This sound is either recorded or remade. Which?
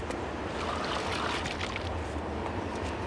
recorded